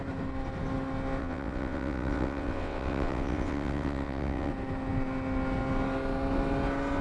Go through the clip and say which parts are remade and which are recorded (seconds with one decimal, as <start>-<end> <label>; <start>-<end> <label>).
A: 0.0-1.2 recorded; 1.2-4.5 remade; 4.5-7.0 recorded